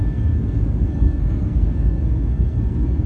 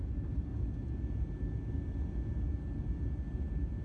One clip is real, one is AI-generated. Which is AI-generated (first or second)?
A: first